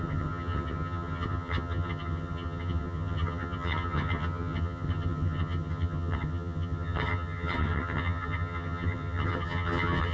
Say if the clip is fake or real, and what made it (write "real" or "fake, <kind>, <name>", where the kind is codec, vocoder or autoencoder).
fake, vocoder, HiFi-GAN